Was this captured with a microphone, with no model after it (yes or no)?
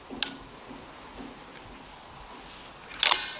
yes